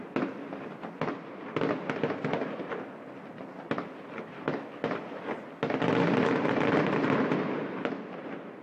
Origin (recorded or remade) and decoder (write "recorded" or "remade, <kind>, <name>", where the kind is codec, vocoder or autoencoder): recorded